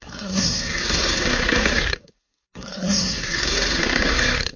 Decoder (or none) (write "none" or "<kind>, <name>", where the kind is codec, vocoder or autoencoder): codec, SNAC